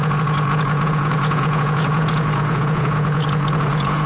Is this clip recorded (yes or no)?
no